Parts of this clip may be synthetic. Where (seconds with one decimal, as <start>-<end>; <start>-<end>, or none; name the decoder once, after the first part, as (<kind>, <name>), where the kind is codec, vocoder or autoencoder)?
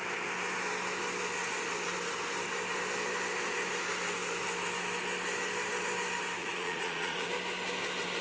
6.4-7.3 (vocoder, Vocos)